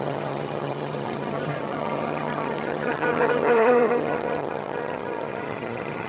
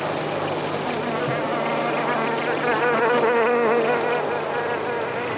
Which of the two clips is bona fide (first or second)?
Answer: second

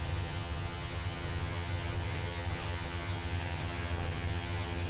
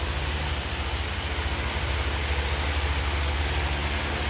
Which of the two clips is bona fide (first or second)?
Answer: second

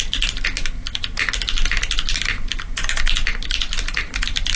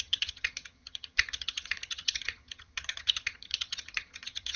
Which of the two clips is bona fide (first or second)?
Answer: first